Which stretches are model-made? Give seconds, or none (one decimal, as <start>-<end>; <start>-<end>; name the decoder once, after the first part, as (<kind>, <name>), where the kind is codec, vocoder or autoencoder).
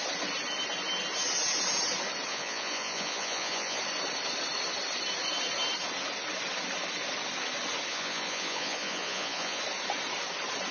2.3-3.8 (vocoder, Vocos); 7.9-9.6